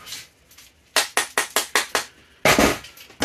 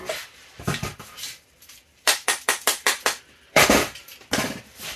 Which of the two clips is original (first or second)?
first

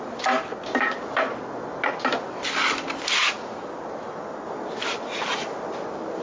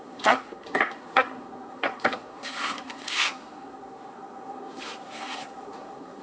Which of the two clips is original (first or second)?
first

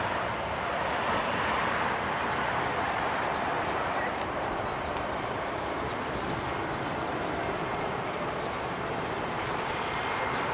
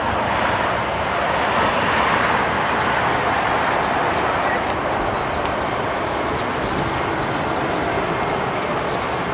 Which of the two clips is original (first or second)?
second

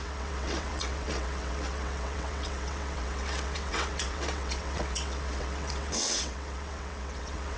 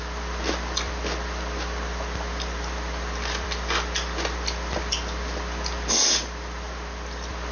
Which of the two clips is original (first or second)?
second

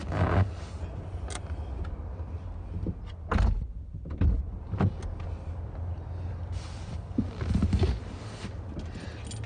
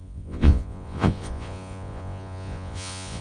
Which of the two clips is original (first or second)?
first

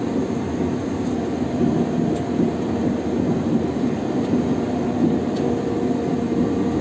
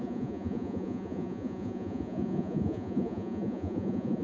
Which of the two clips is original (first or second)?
first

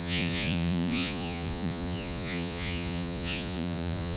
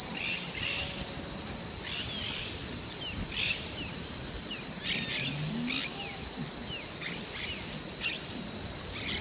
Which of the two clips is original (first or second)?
second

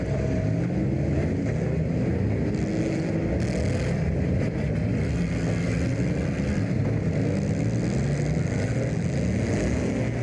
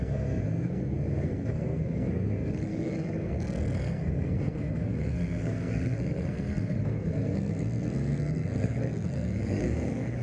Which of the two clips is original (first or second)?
first